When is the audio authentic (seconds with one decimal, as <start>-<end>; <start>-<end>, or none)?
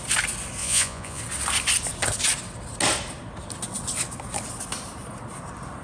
0.0-0.6; 1.2-5.8